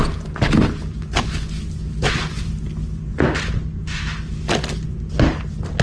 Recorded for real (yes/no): yes